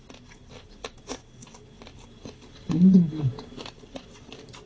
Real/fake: real